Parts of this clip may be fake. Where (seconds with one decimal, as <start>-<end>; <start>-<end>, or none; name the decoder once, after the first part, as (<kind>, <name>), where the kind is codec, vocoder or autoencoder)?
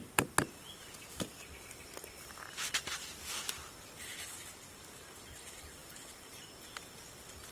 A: 0.0-4.5 (vocoder, BigVGAN v2); 5.8-6.4